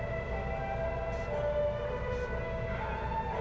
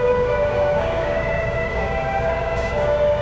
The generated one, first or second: second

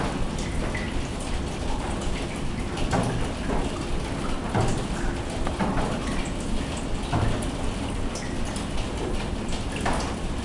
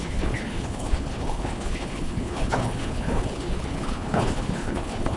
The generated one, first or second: second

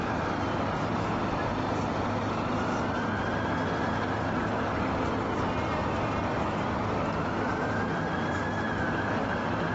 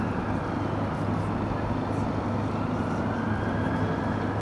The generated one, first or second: first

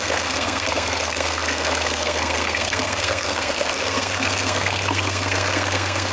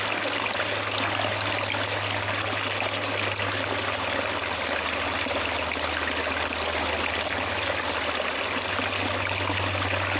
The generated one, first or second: first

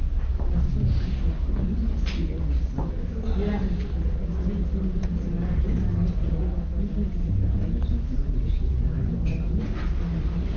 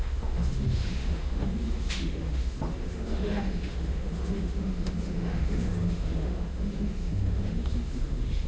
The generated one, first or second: second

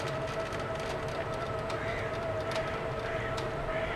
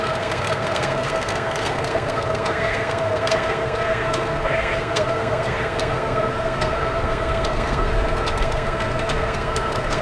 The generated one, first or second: second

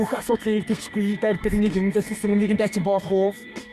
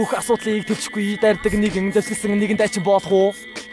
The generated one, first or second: first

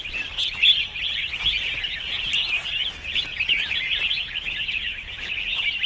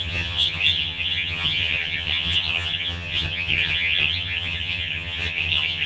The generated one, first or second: second